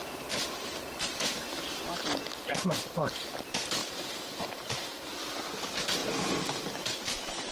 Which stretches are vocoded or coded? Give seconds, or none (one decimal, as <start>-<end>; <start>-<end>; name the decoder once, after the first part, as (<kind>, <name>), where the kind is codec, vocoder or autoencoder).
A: 3.8-5.0 (vocoder, BigVGAN v2); 6.0-7.5